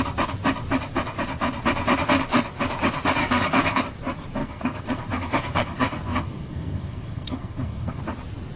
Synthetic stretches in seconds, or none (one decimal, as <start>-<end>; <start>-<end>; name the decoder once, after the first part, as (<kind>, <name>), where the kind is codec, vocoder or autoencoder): 3.2-3.8 (codec, SNAC); 4.4-8.0